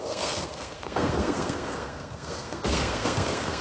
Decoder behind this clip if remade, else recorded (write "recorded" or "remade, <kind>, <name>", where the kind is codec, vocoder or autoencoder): remade, codec, SNAC